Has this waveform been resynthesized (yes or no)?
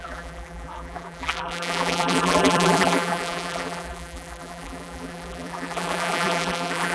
yes